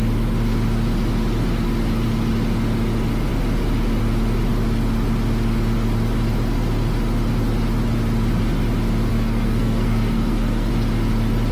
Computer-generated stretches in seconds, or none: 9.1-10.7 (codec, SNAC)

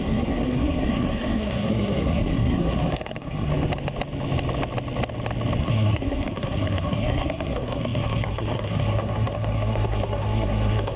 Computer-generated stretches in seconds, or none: 0.0-3.5 (codec, SNAC); 5.6-11.0

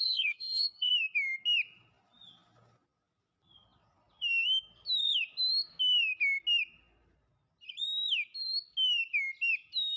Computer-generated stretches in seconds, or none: 0.0-0.9 (codec, SNAC)